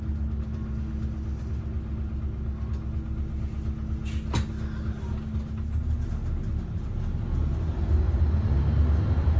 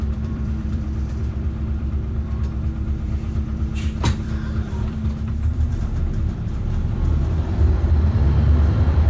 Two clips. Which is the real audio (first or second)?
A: first